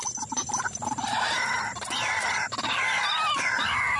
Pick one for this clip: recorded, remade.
remade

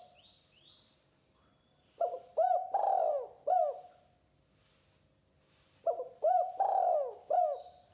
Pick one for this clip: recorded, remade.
recorded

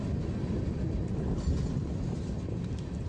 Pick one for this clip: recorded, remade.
recorded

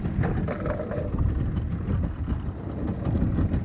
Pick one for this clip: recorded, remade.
recorded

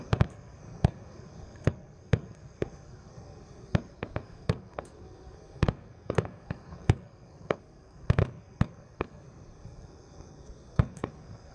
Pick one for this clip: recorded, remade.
remade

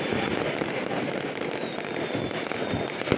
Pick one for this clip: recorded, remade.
recorded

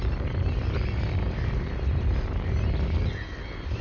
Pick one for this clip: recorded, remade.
recorded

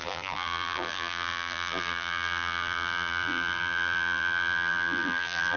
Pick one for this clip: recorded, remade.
remade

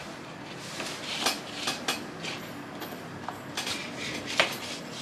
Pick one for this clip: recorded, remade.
recorded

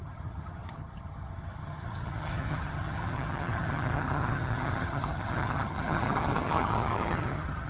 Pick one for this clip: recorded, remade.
remade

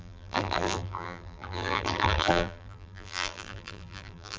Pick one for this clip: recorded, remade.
remade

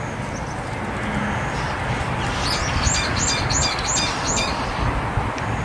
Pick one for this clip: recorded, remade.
recorded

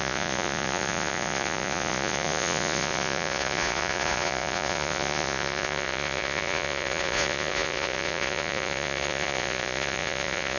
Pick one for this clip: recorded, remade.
remade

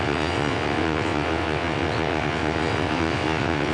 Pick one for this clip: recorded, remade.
remade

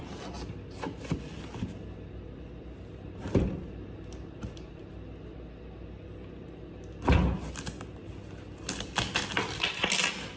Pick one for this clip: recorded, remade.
recorded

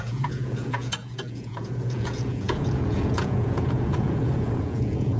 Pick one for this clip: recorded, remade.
remade